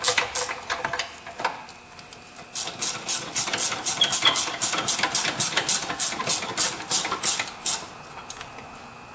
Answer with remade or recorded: recorded